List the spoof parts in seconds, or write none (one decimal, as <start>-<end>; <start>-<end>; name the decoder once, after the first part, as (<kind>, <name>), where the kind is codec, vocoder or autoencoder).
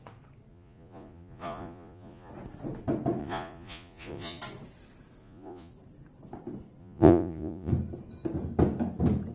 0.5-2.3 (vocoder, Vocos); 3.2-4.4; 5.2-5.7; 6.8-7.7